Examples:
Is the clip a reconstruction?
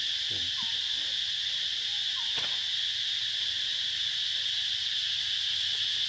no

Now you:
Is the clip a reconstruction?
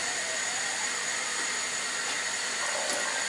no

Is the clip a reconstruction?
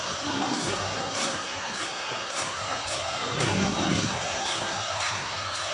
yes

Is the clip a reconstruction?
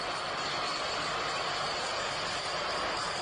no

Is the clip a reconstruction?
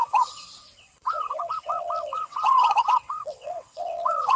yes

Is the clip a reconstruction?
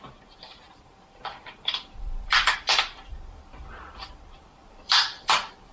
yes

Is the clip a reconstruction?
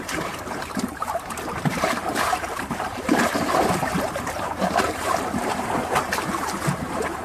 yes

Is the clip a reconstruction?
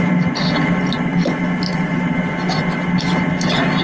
no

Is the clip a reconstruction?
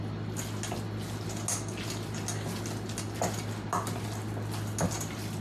no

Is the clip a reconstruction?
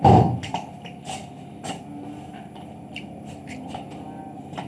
yes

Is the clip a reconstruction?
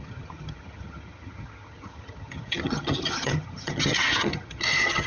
yes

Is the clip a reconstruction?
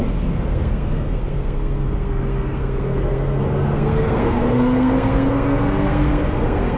yes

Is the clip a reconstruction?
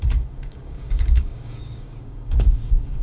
yes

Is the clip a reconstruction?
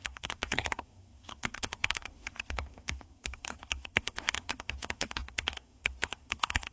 yes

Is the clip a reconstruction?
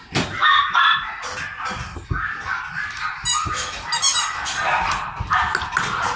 no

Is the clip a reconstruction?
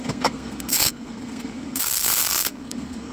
yes